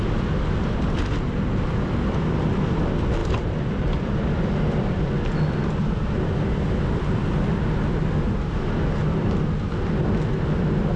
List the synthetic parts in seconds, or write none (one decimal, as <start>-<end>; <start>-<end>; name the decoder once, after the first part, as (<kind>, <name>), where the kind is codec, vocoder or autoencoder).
3.2-5.1 (vocoder, BigVGAN v2)